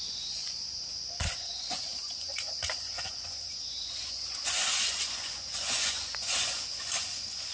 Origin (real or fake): fake